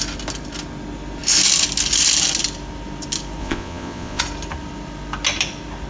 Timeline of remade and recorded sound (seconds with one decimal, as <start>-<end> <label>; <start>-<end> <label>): 0.0-3.4 recorded; 3.4-4.2 remade; 4.2-5.9 recorded